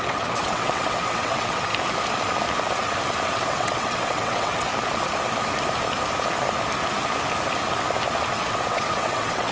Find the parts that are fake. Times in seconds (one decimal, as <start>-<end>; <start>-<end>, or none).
0.0-1.7; 3.3-4.7; 8.3-9.5